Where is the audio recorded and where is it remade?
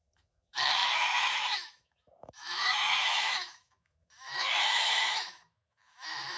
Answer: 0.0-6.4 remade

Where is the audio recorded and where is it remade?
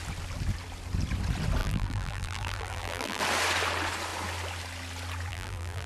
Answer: 0.0-1.6 recorded; 1.6-3.2 remade; 3.2-5.3 recorded; 5.3-5.9 remade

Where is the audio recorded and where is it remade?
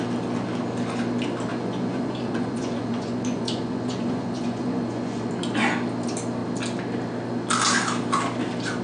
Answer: 0.0-1.5 recorded; 1.5-5.3 remade; 5.3-8.8 recorded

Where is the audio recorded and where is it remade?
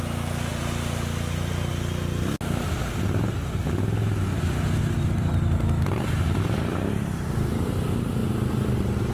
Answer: 0.0-0.5 recorded; 0.5-1.7 remade; 1.7-2.8 recorded; 2.8-3.5 remade; 3.5-9.1 recorded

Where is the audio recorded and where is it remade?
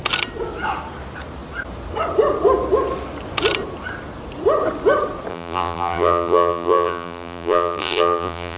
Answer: 0.0-5.3 recorded; 5.3-8.6 remade